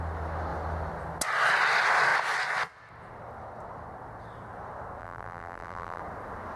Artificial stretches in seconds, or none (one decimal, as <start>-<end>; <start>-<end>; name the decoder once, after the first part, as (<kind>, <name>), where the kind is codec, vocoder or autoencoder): 5.0-6.0 (vocoder, BigVGAN v2)